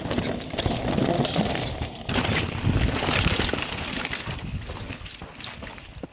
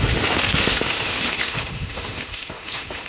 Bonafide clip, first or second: first